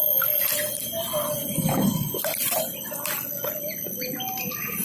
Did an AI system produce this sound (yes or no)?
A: no